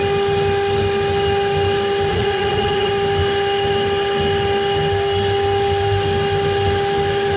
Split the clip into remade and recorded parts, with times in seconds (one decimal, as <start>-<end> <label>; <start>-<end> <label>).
0.0-2.1 recorded; 2.1-2.9 remade; 2.9-7.4 recorded